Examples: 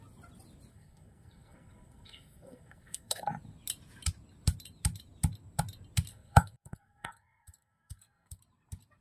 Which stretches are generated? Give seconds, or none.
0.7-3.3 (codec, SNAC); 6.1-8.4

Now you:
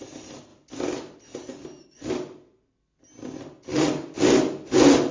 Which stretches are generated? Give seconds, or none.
none

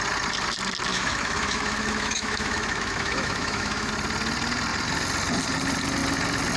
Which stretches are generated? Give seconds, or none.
0.9-3.9 (autoencoder, DAC-VAE)